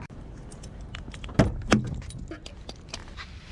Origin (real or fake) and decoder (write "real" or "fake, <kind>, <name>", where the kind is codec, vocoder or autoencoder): real